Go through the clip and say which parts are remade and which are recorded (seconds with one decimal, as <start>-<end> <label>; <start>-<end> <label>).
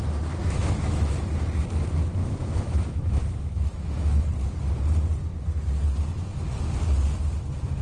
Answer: 0.0-0.4 recorded; 0.4-1.2 remade; 1.2-2.2 recorded; 2.2-4.3 remade; 4.3-7.8 recorded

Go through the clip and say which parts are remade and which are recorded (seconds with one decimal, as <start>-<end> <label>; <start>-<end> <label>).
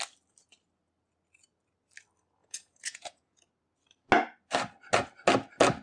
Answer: 0.0-2.4 recorded; 2.4-3.5 remade; 3.5-5.8 recorded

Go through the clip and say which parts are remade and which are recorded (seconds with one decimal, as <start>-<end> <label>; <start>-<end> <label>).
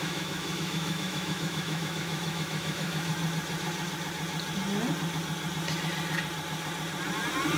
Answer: 0.0-3.1 remade; 3.1-7.6 recorded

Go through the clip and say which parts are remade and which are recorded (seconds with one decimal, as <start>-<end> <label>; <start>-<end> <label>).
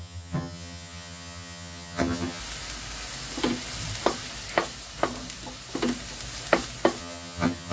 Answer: 0.0-2.4 remade; 2.4-7.0 recorded; 7.0-7.7 remade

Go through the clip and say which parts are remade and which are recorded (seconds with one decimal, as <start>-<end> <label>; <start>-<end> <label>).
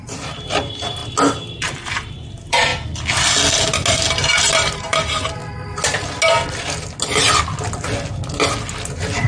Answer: 0.0-1.0 remade; 1.0-1.6 recorded; 1.6-2.7 remade; 2.7-4.1 recorded; 4.1-5.4 remade; 5.4-9.3 recorded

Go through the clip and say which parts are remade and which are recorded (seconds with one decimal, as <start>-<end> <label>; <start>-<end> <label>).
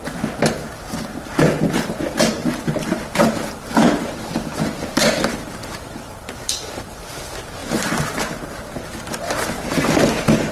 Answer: 0.0-2.4 recorded; 2.4-6.9 remade; 6.9-7.6 recorded; 7.6-8.2 remade; 8.2-10.5 recorded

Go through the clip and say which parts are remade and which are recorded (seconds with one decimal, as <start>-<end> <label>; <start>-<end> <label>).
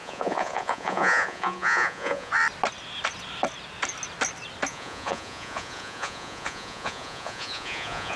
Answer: 0.0-2.3 remade; 2.3-4.7 recorded; 4.7-8.2 remade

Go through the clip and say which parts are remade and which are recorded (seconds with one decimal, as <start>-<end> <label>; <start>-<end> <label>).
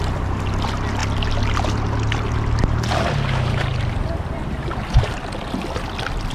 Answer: 0.0-6.3 recorded